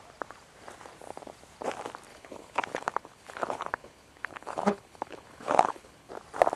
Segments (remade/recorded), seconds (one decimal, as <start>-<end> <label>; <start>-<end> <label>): 0.0-2.1 recorded; 2.1-6.1 remade; 6.1-6.6 recorded